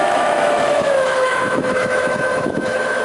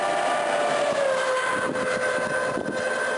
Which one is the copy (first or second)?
first